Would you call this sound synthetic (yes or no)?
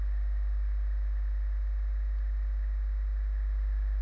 no